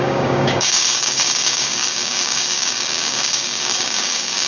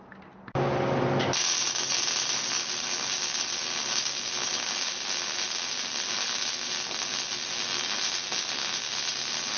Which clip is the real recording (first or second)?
second